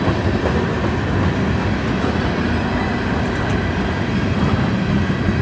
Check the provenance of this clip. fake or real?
real